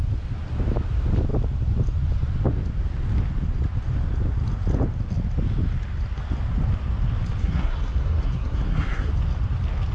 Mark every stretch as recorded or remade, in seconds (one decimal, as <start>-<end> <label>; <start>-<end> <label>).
0.0-7.4 recorded; 7.4-9.1 remade; 9.1-9.9 recorded